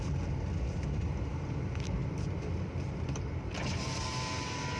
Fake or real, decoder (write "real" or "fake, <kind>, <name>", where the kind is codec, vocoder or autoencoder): fake, vocoder, BigVGAN v2